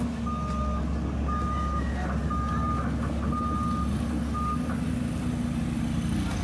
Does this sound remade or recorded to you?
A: recorded